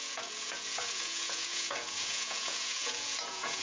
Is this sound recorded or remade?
remade